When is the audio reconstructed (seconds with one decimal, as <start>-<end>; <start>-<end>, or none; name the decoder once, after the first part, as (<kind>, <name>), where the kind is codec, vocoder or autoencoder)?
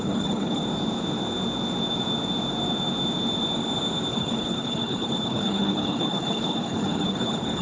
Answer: 0.0-0.6 (codec, HILCodec); 4.1-7.6